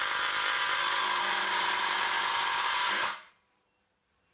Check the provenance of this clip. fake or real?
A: fake